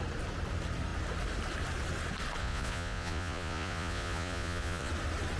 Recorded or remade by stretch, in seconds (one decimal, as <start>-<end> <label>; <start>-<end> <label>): 0.0-2.4 recorded; 2.4-4.9 remade; 4.9-5.4 recorded